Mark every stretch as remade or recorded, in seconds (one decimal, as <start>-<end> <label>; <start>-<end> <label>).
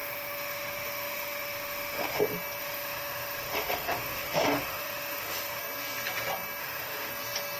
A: 0.0-2.2 remade; 2.2-2.6 recorded; 2.6-5.6 remade; 5.6-6.6 recorded; 6.6-7.1 remade; 7.1-7.6 recorded